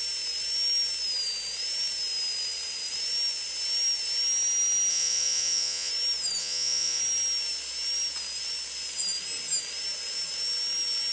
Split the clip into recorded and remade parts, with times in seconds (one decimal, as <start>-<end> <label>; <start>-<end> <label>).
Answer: 0.0-4.9 recorded; 4.9-5.9 remade; 5.9-6.4 recorded; 6.4-7.0 remade; 7.0-11.1 recorded